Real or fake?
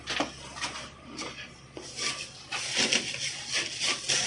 real